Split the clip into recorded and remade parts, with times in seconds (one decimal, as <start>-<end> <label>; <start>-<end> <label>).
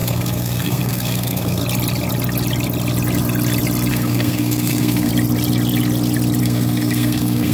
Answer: 0.0-1.6 remade; 1.6-3.9 recorded; 3.9-5.1 remade; 5.1-6.4 recorded; 6.4-7.5 remade